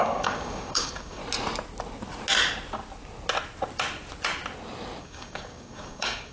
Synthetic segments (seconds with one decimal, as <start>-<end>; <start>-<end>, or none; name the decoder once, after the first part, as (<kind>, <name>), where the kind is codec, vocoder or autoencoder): 0.0-1.2 (codec, DAC); 5.0-6.3